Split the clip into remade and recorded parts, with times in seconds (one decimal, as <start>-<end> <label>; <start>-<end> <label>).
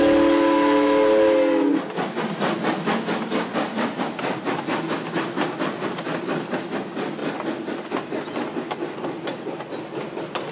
0.0-10.5 recorded